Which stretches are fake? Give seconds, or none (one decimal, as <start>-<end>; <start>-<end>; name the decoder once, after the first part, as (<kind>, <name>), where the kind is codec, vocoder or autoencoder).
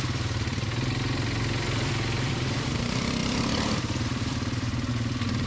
0.0-5.5 (vocoder, BigVGAN v2)